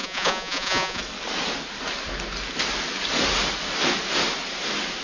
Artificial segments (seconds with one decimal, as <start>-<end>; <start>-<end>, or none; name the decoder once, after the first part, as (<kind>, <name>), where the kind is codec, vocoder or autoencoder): 0.0-1.0 (vocoder, Vocos)